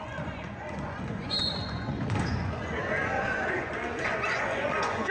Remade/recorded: remade